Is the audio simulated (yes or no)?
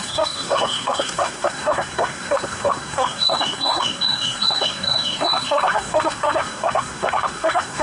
yes